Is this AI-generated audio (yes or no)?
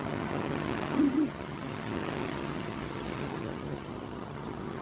yes